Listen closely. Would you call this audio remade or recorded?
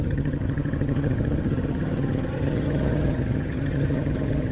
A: remade